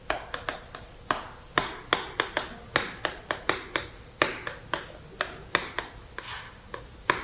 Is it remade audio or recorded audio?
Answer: recorded